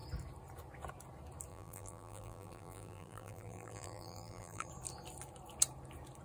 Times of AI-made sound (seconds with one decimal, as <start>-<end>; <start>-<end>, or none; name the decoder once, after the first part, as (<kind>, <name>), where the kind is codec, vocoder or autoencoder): 1.5-4.7 (vocoder, BigVGAN v2)